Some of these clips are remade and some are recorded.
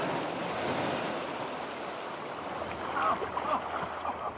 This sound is recorded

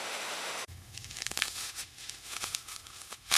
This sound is remade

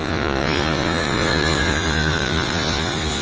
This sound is remade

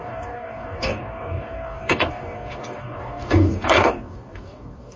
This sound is remade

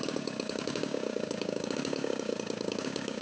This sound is remade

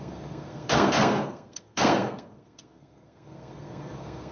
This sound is remade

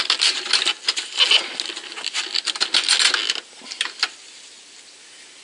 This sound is recorded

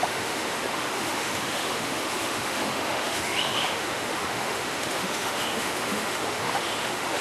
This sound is remade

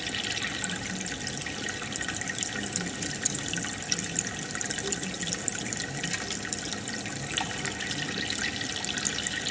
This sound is recorded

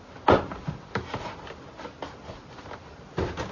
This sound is recorded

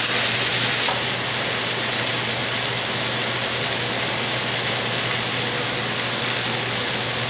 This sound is recorded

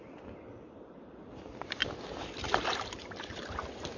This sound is recorded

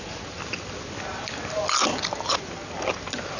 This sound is recorded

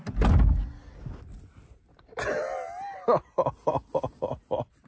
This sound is recorded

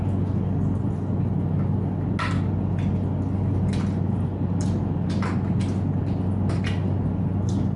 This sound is recorded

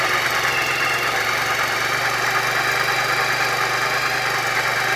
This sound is recorded